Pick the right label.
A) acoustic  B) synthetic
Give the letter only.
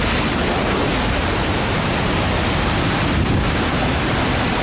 A